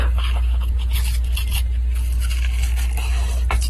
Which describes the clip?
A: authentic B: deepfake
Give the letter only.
A